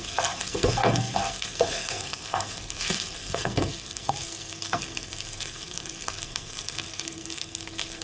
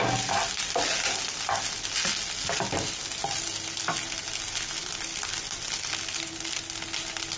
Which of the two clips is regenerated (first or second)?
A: first